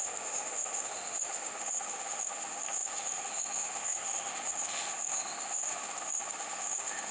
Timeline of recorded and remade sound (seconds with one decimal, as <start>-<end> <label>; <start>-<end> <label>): 0.0-7.1 remade